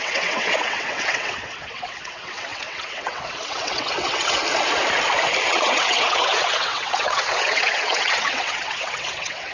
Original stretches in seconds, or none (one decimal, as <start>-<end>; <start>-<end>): 4.4-5.5